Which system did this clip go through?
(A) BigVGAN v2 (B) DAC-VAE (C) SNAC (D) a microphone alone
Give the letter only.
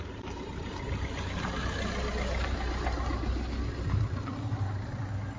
D